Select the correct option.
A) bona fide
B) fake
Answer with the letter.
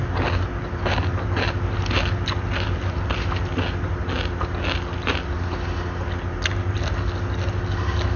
A